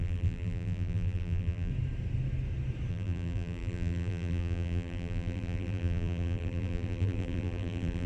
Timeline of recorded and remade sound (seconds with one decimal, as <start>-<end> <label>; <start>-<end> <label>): 0.0-1.7 remade; 1.7-2.9 recorded; 2.9-8.1 remade